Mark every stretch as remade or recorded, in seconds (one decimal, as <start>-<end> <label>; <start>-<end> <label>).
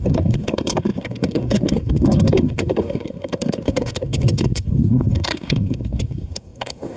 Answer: 0.0-7.0 remade